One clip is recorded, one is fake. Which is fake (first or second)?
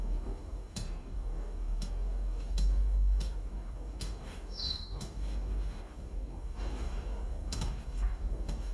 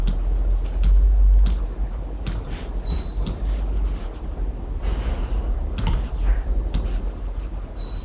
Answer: first